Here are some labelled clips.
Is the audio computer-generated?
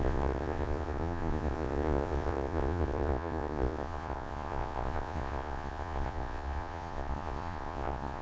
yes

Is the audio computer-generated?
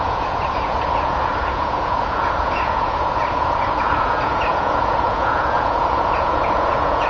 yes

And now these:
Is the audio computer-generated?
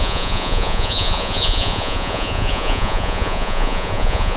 yes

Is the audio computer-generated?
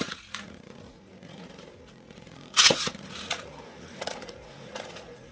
yes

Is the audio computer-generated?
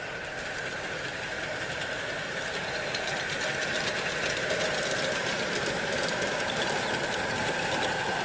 no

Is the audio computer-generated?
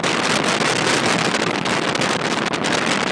no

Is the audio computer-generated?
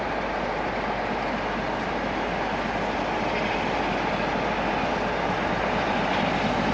no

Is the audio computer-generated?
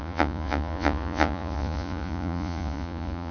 yes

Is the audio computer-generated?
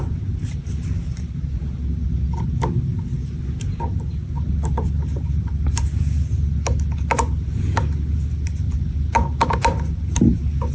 no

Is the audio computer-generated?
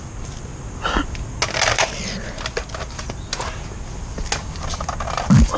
no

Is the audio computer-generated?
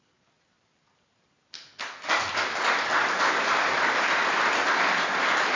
no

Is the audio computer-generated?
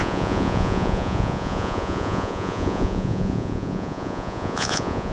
yes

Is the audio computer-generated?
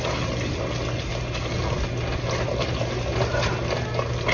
no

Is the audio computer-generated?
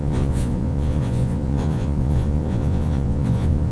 yes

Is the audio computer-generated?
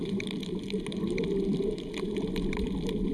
no